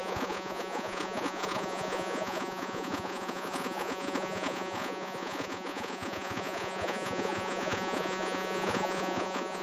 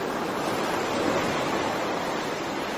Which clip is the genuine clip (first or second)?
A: second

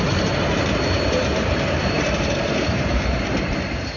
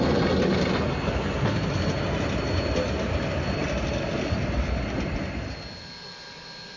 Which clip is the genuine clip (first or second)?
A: second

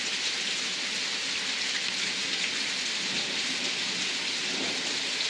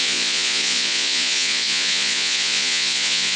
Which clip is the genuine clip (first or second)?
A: first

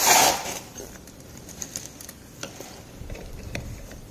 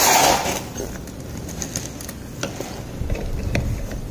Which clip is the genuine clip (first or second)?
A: second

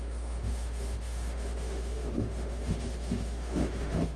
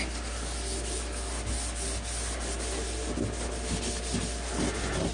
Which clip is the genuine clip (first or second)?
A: second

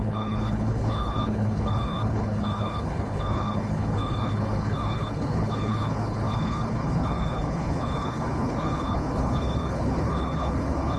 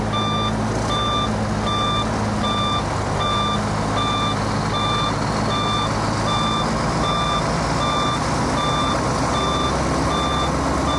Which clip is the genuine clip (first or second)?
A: second